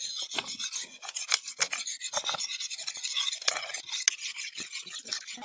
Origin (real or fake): real